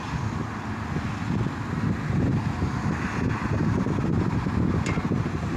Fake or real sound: real